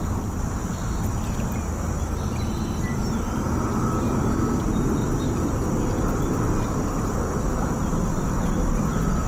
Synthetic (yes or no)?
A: no